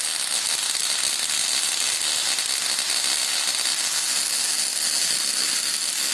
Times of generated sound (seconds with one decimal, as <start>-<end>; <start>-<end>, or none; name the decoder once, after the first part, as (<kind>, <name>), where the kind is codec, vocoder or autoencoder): none